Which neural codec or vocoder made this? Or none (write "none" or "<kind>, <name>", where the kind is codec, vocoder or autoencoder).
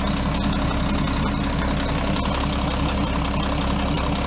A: none